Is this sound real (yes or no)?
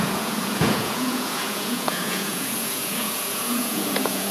no